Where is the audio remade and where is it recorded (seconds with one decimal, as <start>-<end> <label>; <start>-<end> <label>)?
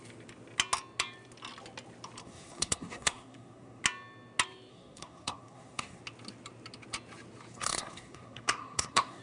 0.0-2.2 recorded; 2.2-3.8 remade; 3.8-4.7 recorded; 4.7-6.0 remade; 6.0-7.5 recorded; 7.5-9.2 remade